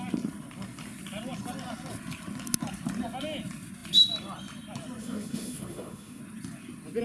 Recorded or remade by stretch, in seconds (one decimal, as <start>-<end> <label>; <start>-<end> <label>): 0.0-5.0 recorded; 5.0-6.2 remade; 6.2-7.0 recorded